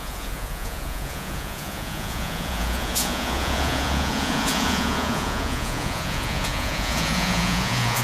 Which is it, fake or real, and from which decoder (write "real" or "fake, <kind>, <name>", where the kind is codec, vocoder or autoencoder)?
fake, vocoder, Vocos